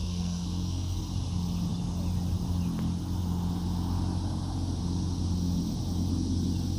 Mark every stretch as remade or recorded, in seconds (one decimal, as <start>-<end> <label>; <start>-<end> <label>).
0.0-1.0 remade; 1.0-6.8 recorded